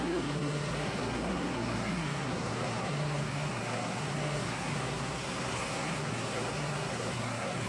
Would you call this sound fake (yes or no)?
yes